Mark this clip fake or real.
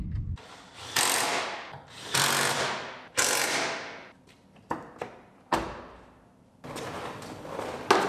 real